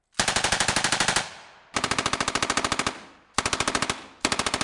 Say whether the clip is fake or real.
real